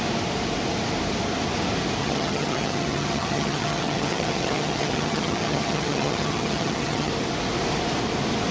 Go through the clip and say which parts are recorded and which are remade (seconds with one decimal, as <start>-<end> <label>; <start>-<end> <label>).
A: 0.0-2.0 recorded; 2.0-7.1 remade; 7.1-8.5 recorded